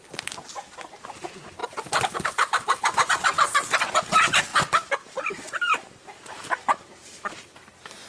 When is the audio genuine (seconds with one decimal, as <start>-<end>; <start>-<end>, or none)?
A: 0.0-1.6; 3.1-4.5; 7.3-8.1